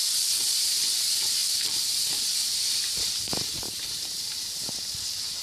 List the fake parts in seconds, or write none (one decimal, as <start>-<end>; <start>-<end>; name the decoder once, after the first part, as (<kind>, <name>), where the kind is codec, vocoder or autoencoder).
0.0-0.8 (vocoder, BigVGAN v2); 1.4-2.9; 3.5-4.2